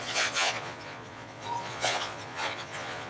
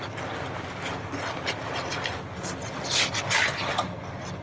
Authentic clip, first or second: second